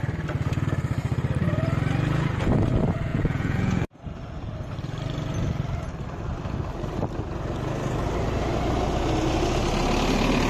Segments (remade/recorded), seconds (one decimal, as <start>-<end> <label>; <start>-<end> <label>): 0.0-3.1 recorded; 3.1-4.0 remade; 4.0-10.5 recorded